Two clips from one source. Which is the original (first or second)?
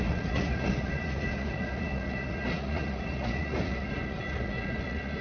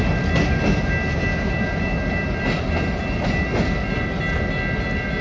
second